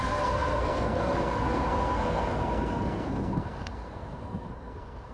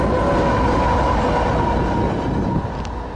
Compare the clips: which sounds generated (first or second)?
first